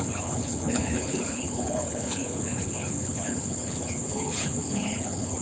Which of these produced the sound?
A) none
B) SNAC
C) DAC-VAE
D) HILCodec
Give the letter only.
D